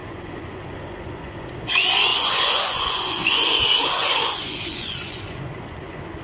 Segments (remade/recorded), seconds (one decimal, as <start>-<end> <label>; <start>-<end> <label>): 0.0-6.2 remade